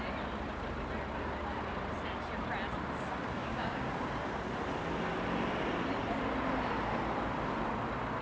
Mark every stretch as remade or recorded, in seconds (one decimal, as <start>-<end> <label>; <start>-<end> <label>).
0.0-3.4 recorded; 3.4-3.9 remade; 3.9-8.2 recorded